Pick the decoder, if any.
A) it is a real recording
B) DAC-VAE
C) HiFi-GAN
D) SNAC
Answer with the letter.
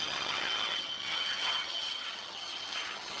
C